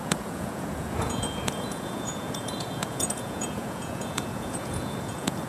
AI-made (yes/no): yes